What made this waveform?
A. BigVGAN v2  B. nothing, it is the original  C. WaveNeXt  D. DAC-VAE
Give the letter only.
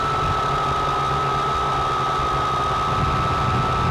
B